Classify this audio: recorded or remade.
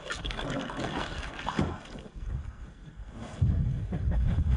remade